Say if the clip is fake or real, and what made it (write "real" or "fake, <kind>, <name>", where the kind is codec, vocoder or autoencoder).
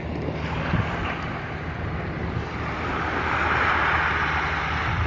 real